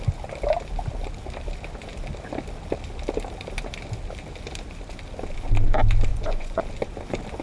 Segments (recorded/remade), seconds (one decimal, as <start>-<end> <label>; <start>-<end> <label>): 0.0-6.1 recorded; 6.1-6.6 remade; 6.6-7.4 recorded